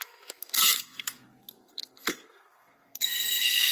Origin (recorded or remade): remade